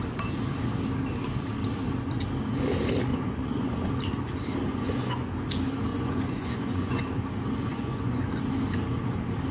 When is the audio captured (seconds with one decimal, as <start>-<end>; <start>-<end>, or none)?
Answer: 0.0-3.1; 3.9-4.7; 5.3-5.9; 7.0-7.7; 8.2-9.5